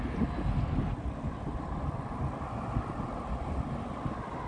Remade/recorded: recorded